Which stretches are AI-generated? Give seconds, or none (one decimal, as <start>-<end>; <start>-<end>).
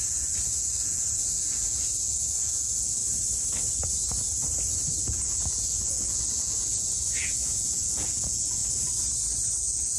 0.0-3.0; 5.0-8.6; 9.6-10.0